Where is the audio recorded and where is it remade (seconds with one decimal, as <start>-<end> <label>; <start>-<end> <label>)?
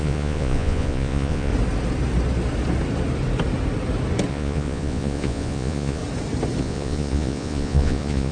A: 0.0-1.5 remade; 1.5-4.3 recorded; 4.3-6.0 remade; 6.0-6.6 recorded; 6.6-8.3 remade